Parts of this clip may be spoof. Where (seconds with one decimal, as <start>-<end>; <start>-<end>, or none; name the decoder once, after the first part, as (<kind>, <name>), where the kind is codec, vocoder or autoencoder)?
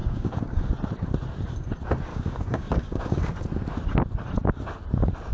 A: 0.0-0.7 (codec, DAC); 2.1-3.3